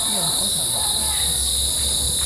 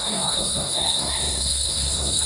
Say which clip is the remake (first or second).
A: second